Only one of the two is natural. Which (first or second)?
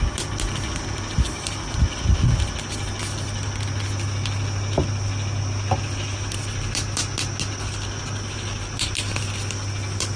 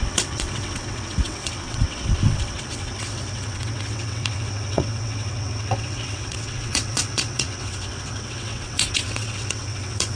first